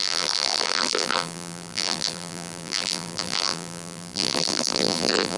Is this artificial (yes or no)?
yes